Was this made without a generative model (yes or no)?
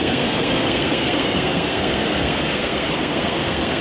no